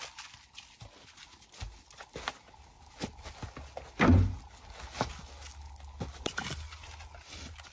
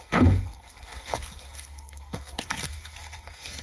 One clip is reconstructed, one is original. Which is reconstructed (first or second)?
second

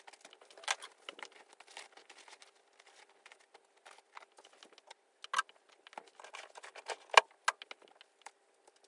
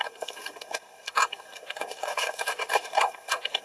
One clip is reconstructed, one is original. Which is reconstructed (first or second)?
second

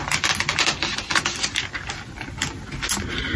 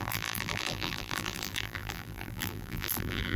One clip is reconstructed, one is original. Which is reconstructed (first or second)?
second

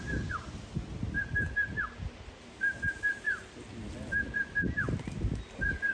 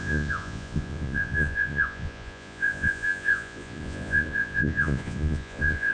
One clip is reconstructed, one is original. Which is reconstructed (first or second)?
second